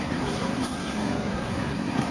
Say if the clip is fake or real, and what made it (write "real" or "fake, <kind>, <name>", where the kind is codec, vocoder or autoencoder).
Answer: fake, codec, SNAC